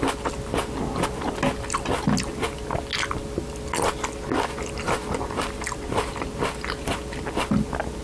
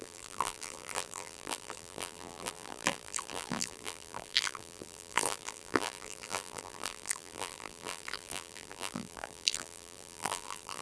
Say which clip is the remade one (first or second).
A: second